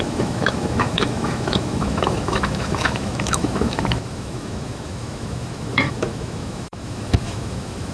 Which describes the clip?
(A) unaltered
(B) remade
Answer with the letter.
B